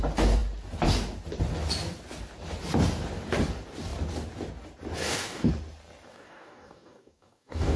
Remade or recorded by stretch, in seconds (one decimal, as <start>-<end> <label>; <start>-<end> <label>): 0.0-5.0 recorded; 5.0-5.5 remade; 5.5-6.1 recorded; 6.1-7.8 remade

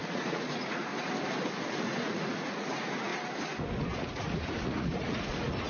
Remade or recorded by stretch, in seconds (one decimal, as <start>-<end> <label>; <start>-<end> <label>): 0.0-0.9 remade; 0.9-1.8 recorded; 1.8-3.1 remade; 3.1-3.9 recorded; 3.9-5.7 remade

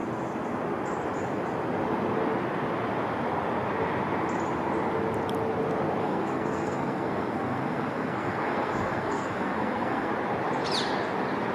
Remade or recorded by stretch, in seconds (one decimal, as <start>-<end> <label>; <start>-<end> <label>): 0.0-6.0 recorded; 6.0-10.1 remade; 10.1-11.5 recorded

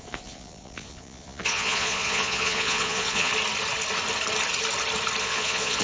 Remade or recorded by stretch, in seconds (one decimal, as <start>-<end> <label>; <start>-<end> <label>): 0.0-3.3 remade; 3.3-5.2 recorded; 5.2-5.8 remade